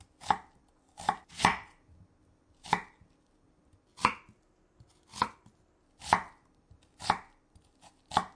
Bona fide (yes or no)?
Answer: yes